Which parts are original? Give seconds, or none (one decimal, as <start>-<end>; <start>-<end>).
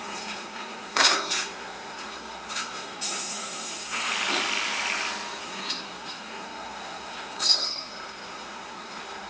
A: 4.1-5.4